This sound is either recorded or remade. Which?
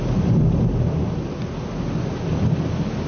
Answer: recorded